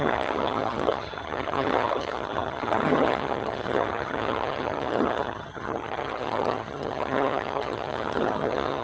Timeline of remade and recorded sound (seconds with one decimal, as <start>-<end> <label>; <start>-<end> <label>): 0.0-8.8 remade